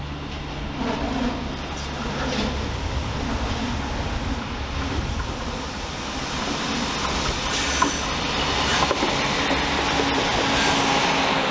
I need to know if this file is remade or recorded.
recorded